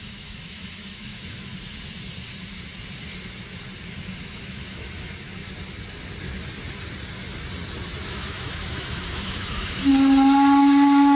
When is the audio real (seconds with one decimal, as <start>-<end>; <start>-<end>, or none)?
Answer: 1.5-4.2; 5.4-8.1; 9.9-10.6